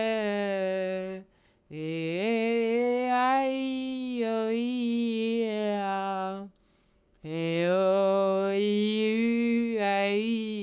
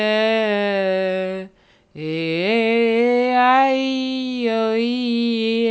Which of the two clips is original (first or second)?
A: second